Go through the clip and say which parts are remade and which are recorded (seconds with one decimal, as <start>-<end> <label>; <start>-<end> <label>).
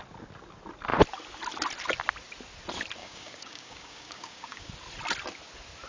0.0-3.0 recorded; 3.0-4.7 remade; 4.7-5.9 recorded